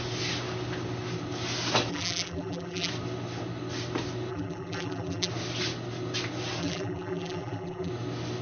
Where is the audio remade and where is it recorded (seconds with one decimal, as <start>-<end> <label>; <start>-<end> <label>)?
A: 0.0-1.9 recorded; 1.9-2.9 remade; 2.9-4.3 recorded; 4.3-5.3 remade; 5.3-6.6 recorded; 6.6-7.9 remade; 7.9-8.4 recorded